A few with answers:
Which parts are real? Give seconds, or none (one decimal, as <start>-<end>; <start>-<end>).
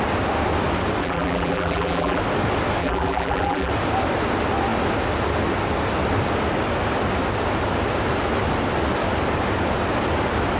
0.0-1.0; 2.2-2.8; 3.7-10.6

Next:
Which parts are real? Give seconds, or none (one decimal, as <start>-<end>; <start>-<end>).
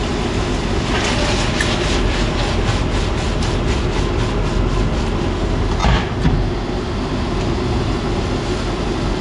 0.0-9.2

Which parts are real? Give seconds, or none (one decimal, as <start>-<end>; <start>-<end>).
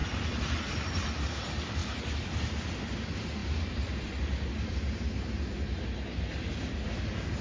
1.2-1.8; 2.5-3.4; 4.1-7.4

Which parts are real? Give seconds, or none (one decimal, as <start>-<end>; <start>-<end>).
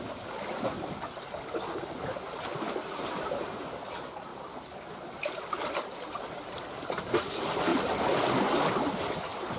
0.0-2.8; 3.3-4.3; 6.6-9.6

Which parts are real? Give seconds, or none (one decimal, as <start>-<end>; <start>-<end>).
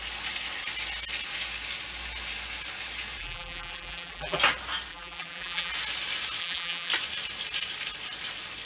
0.0-3.2; 4.4-4.9; 5.7-6.4; 6.9-8.7